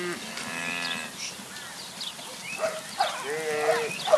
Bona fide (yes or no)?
yes